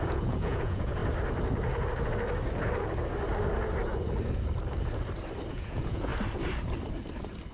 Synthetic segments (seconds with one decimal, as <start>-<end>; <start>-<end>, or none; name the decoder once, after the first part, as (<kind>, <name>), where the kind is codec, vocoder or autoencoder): 0.0-1.0 (vocoder, Vocos); 5.5-6.1